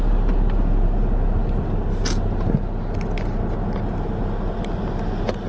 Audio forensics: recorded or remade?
recorded